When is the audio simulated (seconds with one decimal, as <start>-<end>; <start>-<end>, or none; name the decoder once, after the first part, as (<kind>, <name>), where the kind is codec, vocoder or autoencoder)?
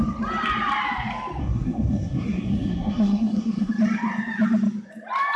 1.4-3.7 (codec, SNAC)